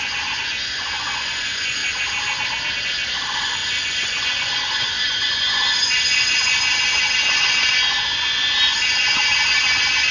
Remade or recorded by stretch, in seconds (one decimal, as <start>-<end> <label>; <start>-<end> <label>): 0.0-1.8 remade; 1.8-2.8 recorded; 2.8-10.1 remade